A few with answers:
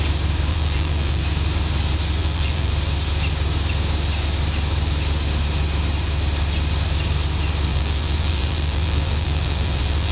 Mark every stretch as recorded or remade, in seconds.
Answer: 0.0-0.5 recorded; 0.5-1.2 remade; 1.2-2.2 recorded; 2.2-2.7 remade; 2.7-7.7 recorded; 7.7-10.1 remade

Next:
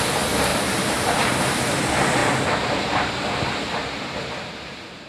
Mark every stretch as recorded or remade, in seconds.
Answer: 0.0-0.5 recorded; 0.5-1.8 remade; 1.8-2.2 recorded; 2.2-5.1 remade

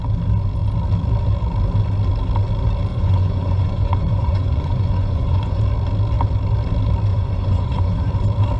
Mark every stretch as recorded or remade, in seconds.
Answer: 0.0-2.9 recorded; 2.9-5.6 remade; 5.6-7.1 recorded; 7.1-8.1 remade; 8.1-8.6 recorded

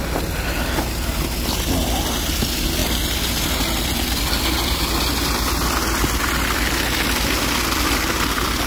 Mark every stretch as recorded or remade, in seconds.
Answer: 0.0-8.7 recorded